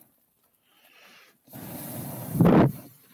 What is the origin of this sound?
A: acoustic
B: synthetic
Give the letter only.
B